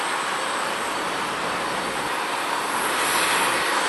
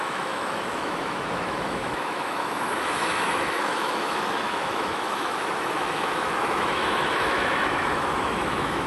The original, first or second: first